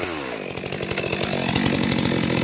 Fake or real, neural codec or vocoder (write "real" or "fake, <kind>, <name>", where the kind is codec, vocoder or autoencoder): real